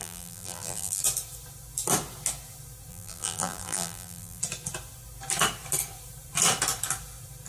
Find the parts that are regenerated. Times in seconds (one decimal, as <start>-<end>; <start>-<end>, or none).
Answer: 0.0-1.0; 2.9-4.4